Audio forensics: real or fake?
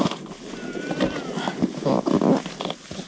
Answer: real